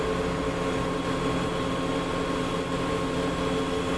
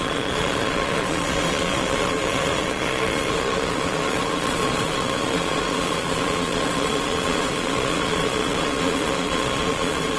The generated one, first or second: second